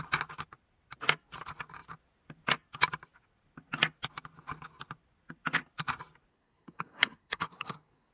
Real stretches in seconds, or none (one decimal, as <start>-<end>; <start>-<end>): 0.0-6.3